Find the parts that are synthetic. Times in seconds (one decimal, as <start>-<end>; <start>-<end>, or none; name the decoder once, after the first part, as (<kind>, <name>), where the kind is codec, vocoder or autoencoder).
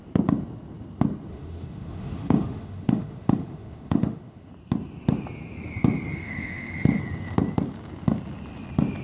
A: 1.3-4.5 (autoencoder, DAC-VAE); 6.1-7.0